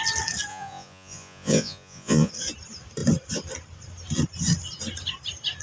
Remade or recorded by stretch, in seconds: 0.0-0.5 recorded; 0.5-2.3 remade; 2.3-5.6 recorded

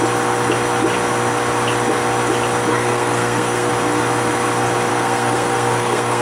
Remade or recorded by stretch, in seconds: 0.0-2.7 recorded; 2.7-3.7 remade; 3.7-4.9 recorded; 4.9-6.2 remade

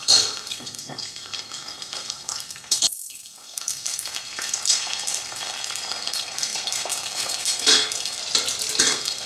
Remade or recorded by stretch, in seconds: 0.0-8.2 remade; 8.2-8.8 recorded; 8.8-9.3 remade

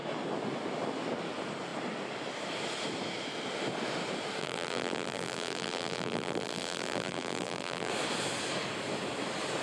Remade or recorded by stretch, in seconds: 0.0-4.4 recorded; 4.4-7.9 remade; 7.9-9.6 recorded